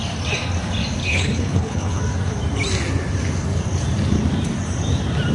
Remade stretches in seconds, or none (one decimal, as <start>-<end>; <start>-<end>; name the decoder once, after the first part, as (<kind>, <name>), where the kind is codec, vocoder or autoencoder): 1.0-2.0 (codec, HILCodec)